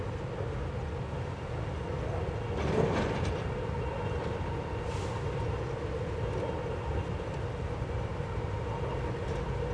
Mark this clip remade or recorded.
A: recorded